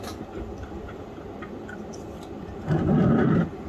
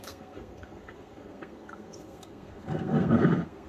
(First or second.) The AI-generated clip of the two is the second